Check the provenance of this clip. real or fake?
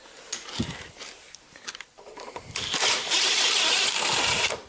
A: fake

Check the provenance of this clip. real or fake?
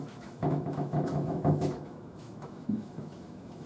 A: fake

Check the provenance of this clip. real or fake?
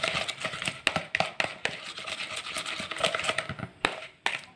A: real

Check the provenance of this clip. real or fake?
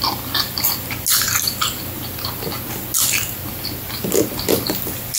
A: real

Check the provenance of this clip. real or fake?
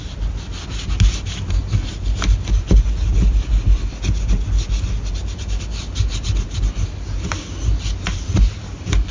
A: real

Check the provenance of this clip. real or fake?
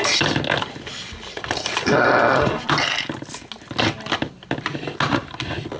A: real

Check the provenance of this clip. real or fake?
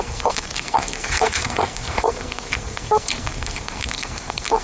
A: fake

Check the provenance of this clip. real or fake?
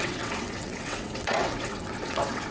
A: fake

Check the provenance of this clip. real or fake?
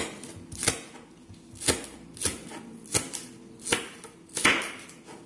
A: real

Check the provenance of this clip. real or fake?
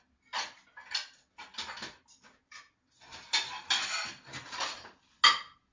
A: real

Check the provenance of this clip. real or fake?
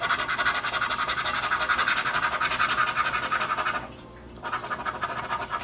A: real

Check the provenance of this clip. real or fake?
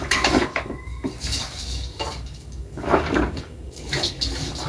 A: fake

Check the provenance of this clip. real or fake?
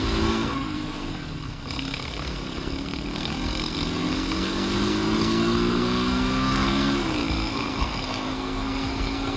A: fake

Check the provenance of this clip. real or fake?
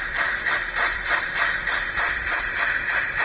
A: fake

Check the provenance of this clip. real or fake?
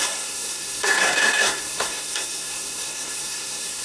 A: fake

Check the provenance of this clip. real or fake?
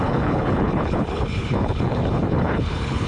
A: fake